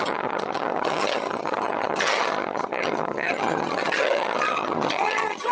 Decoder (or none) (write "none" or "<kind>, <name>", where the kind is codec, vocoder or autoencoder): vocoder, HiFi-GAN